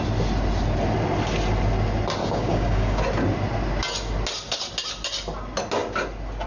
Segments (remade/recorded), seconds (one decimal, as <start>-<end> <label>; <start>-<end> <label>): 0.0-2.2 recorded; 2.2-3.0 remade; 3.0-6.5 recorded

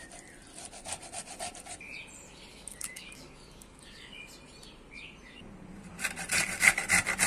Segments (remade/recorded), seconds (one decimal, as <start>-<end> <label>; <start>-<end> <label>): 0.0-2.5 recorded; 2.5-4.2 remade; 4.2-7.3 recorded

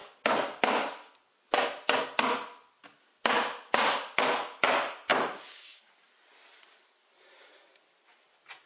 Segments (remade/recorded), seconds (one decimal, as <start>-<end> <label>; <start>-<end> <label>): 0.0-0.6 remade; 0.6-5.1 recorded; 5.1-5.9 remade; 5.9-8.7 recorded

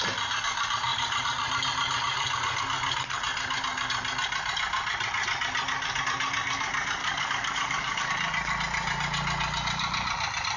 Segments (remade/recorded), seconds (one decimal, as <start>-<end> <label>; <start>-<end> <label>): 0.0-7.0 recorded; 7.0-8.1 remade; 8.1-10.6 recorded

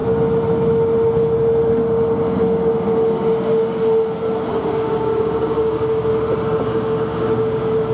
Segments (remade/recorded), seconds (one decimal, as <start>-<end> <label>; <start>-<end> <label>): 0.0-4.5 recorded; 4.5-6.1 remade; 6.1-6.6 recorded; 6.6-7.9 remade